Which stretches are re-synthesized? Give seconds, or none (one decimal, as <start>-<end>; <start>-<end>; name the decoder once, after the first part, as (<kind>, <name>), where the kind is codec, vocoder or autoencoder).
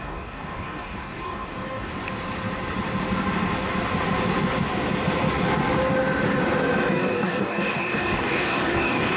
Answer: 0.0-1.9 (codec, DAC); 6.9-9.2